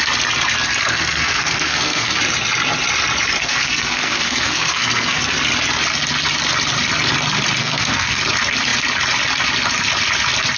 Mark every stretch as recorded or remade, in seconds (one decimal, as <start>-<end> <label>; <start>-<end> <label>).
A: 0.0-0.8 recorded; 0.8-2.2 remade; 2.2-3.4 recorded; 3.4-5.2 remade; 5.2-7.6 recorded; 7.6-8.2 remade; 8.2-10.6 recorded

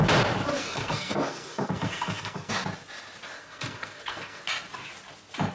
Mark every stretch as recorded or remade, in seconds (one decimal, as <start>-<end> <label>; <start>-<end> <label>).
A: 0.0-0.5 recorded; 0.5-2.5 remade; 2.5-3.4 recorded; 3.4-4.4 remade; 4.4-5.5 recorded

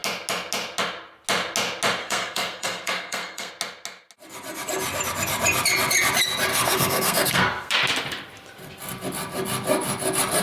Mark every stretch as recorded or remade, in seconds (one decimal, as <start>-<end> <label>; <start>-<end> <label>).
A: 0.0-2.0 recorded; 2.0-3.5 remade; 3.5-6.5 recorded; 6.5-7.7 remade; 7.7-10.4 recorded

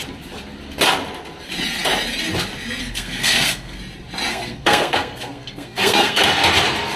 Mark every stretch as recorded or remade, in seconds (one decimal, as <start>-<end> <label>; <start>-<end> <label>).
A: 0.0-2.8 recorded; 2.8-3.8 remade; 3.8-4.3 recorded; 4.3-6.2 remade; 6.2-7.0 recorded

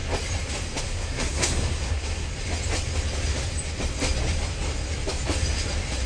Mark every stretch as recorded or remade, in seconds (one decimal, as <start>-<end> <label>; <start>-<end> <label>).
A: 0.0-0.8 recorded; 0.8-2.3 remade; 2.3-6.1 recorded